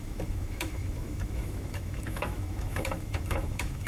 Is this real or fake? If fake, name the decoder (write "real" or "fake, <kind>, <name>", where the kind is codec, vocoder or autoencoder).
fake, autoencoder, DAC-VAE